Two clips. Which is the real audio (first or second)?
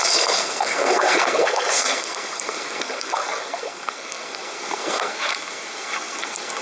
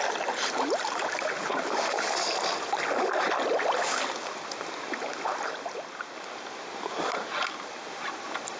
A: second